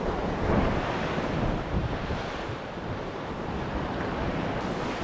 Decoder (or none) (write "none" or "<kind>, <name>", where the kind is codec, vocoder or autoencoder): none